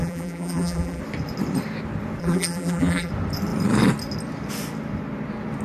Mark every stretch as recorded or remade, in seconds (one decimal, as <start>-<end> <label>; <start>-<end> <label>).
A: 0.0-1.0 remade; 1.0-2.2 recorded; 2.2-3.1 remade; 3.1-5.6 recorded